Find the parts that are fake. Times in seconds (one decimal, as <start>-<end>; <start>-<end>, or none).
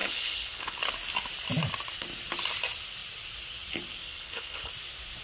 0.0-0.9; 4.0-4.7